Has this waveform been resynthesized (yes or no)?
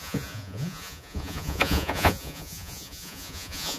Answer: yes